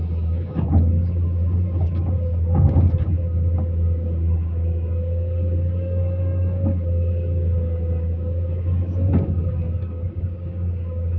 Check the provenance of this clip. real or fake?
fake